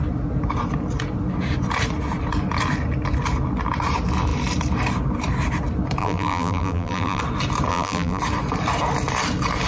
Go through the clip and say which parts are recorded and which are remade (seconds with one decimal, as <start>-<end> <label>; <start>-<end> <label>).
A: 0.0-6.0 recorded; 6.0-7.2 remade; 7.2-7.7 recorded; 7.7-8.2 remade; 8.2-9.7 recorded